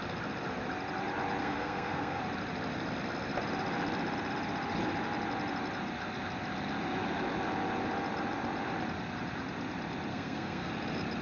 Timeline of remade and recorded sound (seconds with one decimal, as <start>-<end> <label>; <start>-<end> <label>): 0.0-1.4 recorded; 1.4-2.2 remade; 2.2-10.1 recorded; 10.1-10.7 remade; 10.7-11.2 recorded